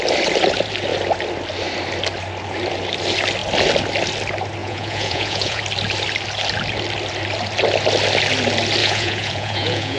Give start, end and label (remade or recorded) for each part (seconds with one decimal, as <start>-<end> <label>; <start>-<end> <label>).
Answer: 0.0-4.6 recorded; 4.6-5.6 remade; 5.6-8.8 recorded; 8.8-10.0 remade